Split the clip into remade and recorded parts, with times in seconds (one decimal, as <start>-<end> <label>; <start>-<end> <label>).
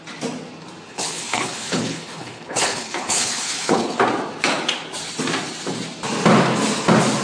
0.0-0.9 recorded; 0.9-4.0 remade; 4.0-7.2 recorded